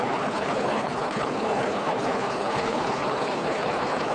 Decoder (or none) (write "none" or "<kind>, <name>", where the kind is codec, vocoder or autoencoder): codec, HILCodec